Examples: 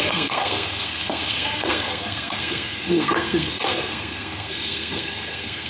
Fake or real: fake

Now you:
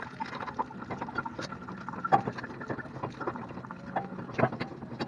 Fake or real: real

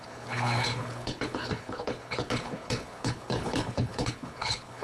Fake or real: fake